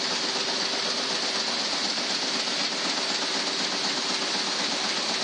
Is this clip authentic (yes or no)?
yes